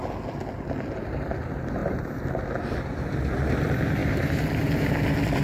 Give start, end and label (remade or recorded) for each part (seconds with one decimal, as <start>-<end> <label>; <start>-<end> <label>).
0.0-4.0 recorded; 4.0-4.9 remade; 4.9-5.4 recorded